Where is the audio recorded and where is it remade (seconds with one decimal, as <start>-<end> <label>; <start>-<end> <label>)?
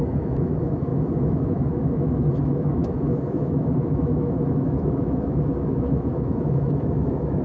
0.0-7.4 remade